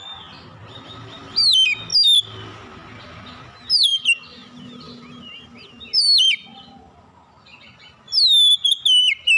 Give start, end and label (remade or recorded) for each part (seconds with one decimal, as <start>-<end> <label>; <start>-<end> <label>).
0.0-9.4 recorded